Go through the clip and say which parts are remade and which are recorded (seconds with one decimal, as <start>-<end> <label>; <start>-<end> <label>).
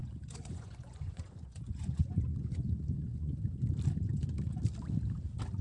0.0-3.4 remade; 3.4-5.6 recorded